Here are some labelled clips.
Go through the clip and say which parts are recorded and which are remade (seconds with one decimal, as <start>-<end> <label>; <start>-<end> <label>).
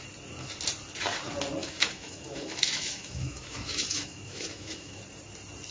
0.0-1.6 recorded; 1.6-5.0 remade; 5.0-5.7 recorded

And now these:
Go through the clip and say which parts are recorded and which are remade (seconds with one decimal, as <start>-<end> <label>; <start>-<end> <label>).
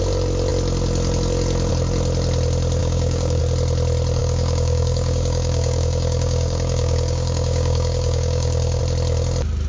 0.0-2.8 recorded; 2.8-3.4 remade; 3.4-4.2 recorded; 4.2-8.8 remade; 8.8-9.7 recorded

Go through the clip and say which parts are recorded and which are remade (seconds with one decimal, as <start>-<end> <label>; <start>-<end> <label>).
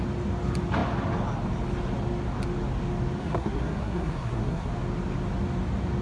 0.0-3.2 recorded; 3.2-4.7 remade; 4.7-6.0 recorded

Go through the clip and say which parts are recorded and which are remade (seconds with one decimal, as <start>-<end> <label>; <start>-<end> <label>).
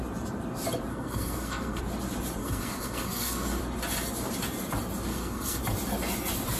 0.0-0.9 recorded; 0.9-1.8 remade; 1.8-2.4 recorded; 2.4-3.6 remade; 3.6-5.1 recorded; 5.1-5.6 remade; 5.6-6.6 recorded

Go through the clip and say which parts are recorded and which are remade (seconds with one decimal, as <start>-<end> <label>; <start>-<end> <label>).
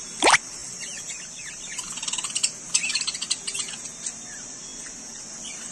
0.0-5.7 recorded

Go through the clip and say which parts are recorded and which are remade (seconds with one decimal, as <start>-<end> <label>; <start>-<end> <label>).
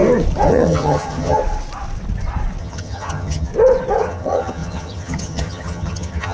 0.0-0.5 recorded; 0.5-1.4 remade; 1.4-2.6 recorded; 2.6-3.5 remade; 3.5-4.0 recorded; 4.0-6.3 remade